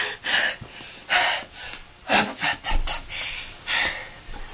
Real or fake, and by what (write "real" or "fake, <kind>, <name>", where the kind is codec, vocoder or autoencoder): real